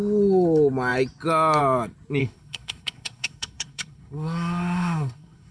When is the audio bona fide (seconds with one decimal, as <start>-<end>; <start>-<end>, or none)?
0.0-2.2